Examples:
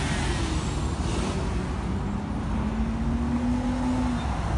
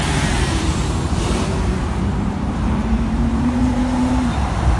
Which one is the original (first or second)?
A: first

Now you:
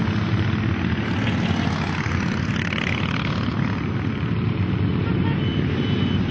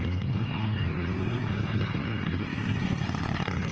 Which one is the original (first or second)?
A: first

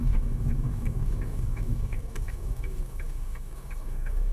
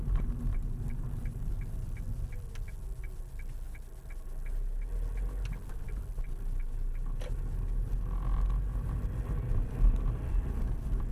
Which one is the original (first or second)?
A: second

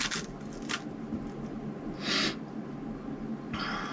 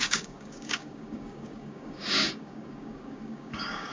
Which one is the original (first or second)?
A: first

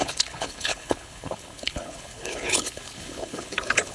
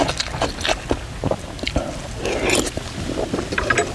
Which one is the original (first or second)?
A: second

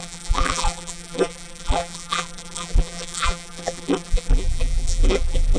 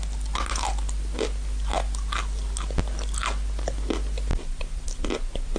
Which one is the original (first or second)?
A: second